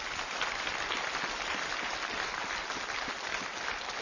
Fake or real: real